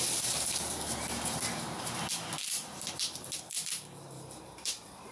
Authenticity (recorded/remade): remade